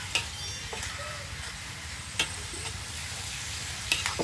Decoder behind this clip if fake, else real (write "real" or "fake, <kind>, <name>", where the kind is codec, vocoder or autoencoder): real